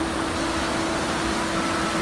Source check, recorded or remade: recorded